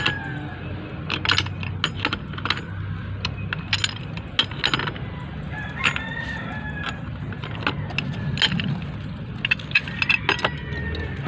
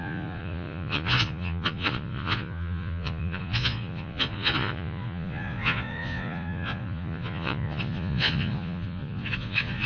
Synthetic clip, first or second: second